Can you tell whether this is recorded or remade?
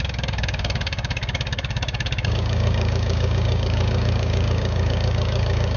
remade